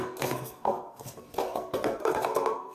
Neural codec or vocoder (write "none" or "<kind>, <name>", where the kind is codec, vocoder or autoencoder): codec, SNAC